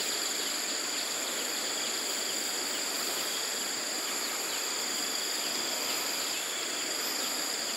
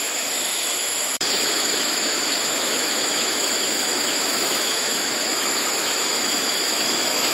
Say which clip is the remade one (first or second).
second